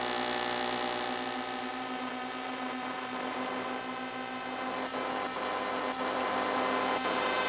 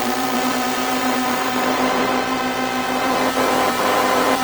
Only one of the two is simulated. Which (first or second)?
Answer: second